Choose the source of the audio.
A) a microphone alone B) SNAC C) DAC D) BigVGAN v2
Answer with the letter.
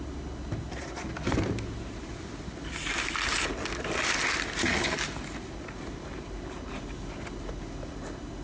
A